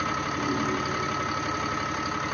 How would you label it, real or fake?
real